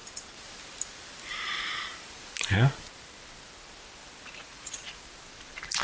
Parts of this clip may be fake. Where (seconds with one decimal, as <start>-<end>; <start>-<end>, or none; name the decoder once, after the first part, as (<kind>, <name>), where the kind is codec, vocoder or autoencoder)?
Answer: 4.0-5.0 (vocoder, Vocos)